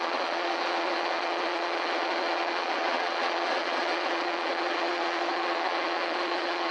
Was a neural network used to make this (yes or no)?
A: yes